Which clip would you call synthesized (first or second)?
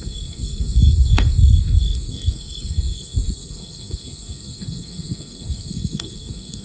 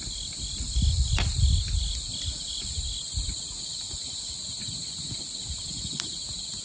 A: first